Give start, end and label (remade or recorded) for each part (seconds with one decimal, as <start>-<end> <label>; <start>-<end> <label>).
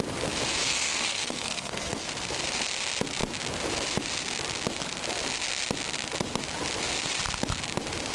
0.0-0.6 recorded; 0.6-2.0 remade; 2.0-8.1 recorded